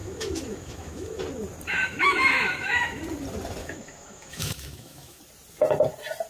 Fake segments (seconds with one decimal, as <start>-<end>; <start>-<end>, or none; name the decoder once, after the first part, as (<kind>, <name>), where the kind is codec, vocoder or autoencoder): 0.0-1.2 (autoencoder, DAC-VAE); 1.7-3.0; 3.6-5.2